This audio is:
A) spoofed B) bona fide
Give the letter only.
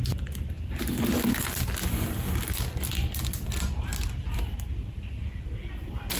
A